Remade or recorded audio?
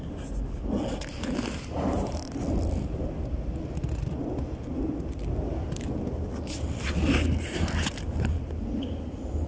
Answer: recorded